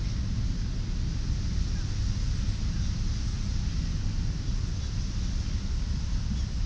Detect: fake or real real